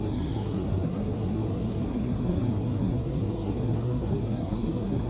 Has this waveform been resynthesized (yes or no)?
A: yes